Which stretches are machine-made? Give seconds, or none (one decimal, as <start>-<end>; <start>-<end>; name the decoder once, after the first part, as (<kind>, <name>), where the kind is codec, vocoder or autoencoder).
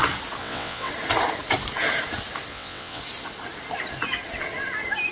0.4-0.9 (vocoder, WaveNeXt); 2.5-3.0